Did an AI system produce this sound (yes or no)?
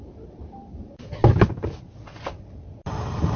no